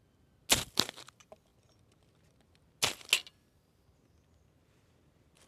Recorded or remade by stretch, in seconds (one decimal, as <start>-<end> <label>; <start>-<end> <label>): 0.0-5.5 recorded

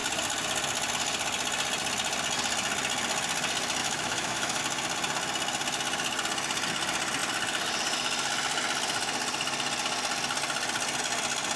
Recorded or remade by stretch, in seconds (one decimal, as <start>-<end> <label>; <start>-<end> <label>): 0.0-3.8 recorded; 3.8-4.6 remade; 4.6-11.6 recorded

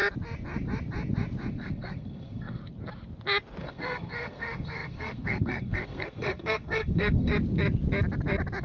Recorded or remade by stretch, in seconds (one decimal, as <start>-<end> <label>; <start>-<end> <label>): 0.0-1.5 recorded; 1.5-2.6 remade; 2.6-3.6 recorded; 3.6-7.3 remade; 7.3-8.6 recorded

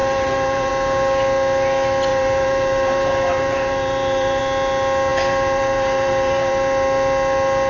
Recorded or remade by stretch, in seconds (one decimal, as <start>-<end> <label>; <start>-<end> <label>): 0.0-0.7 remade; 0.7-2.1 recorded; 2.1-4.4 remade; 4.4-5.1 recorded; 5.1-6.5 remade; 6.5-7.7 recorded

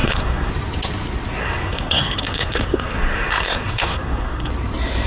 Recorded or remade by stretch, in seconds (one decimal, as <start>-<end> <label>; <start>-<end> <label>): 0.0-0.5 remade; 0.5-1.4 recorded; 1.4-4.5 remade; 4.5-5.1 recorded

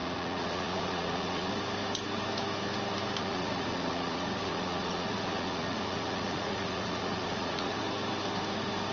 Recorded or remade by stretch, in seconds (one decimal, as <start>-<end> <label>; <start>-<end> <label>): 0.0-1.5 remade; 1.5-3.2 recorded; 3.2-7.8 remade; 7.8-8.9 recorded